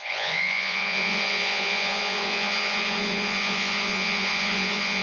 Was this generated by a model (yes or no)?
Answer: yes